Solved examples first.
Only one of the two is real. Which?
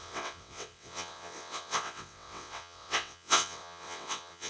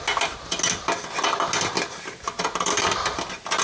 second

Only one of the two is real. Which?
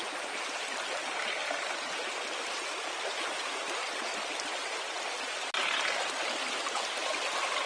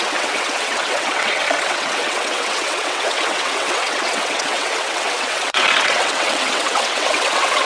first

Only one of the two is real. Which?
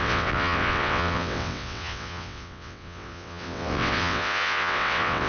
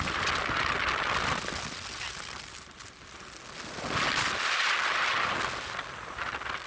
second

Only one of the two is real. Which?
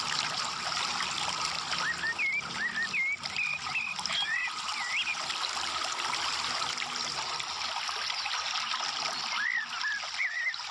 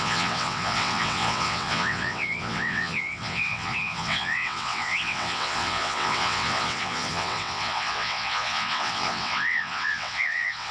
first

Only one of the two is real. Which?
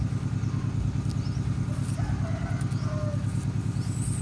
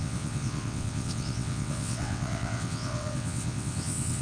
first